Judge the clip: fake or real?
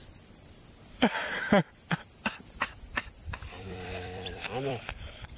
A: fake